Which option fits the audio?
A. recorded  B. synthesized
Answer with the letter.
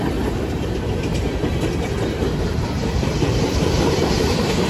B